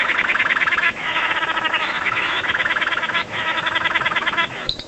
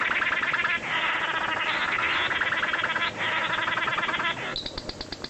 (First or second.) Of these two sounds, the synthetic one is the first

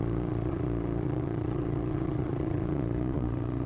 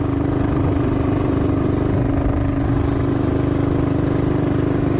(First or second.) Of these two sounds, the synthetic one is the first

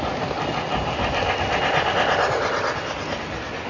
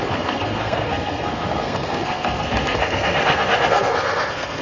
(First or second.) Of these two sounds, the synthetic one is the second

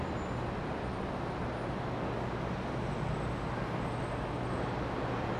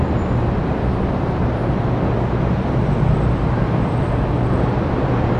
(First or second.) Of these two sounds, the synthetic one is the second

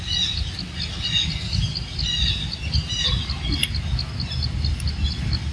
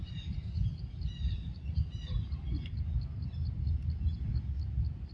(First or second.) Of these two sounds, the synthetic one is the second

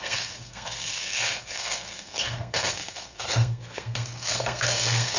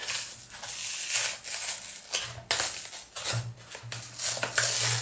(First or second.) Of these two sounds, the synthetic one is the first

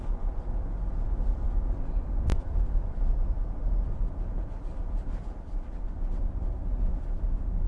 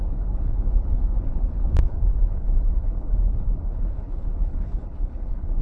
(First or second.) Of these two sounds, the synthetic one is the second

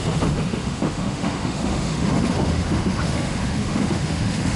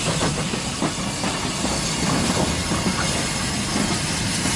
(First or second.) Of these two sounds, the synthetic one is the first